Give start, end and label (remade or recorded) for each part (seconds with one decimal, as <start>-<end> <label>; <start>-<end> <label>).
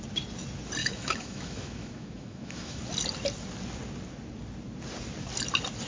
0.0-0.8 recorded; 0.8-2.8 remade; 2.8-5.9 recorded